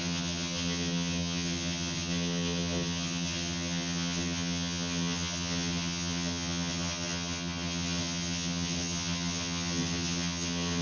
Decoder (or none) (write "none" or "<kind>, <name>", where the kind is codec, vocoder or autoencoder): vocoder, HiFi-GAN